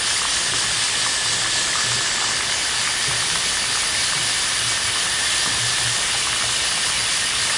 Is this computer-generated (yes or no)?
no